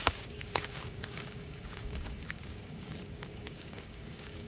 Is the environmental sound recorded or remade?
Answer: remade